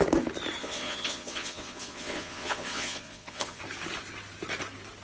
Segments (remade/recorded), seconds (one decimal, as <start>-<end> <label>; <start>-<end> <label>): 0.0-0.6 recorded; 0.6-3.6 remade; 3.6-5.0 recorded